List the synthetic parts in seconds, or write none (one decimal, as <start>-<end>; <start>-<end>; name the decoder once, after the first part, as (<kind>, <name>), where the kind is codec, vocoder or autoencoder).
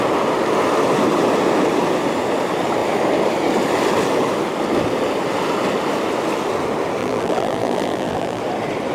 7.0-8.4 (vocoder, BigVGAN v2)